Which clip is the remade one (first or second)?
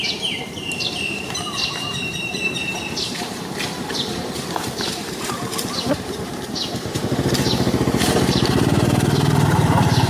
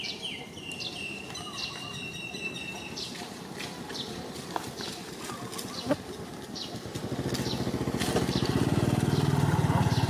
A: first